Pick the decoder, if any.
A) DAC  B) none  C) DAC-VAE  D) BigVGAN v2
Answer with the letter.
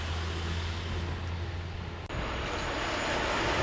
B